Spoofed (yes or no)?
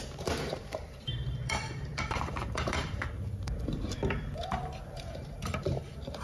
yes